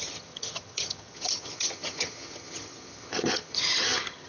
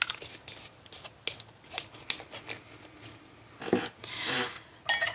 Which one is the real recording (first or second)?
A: second